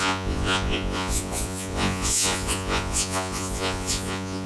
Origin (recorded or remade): remade